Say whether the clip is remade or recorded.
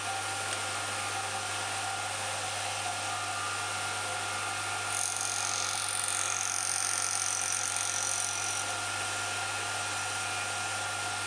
recorded